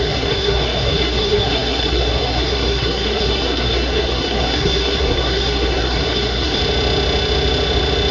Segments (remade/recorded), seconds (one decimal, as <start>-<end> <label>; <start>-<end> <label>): 0.0-6.6 remade; 6.6-8.1 recorded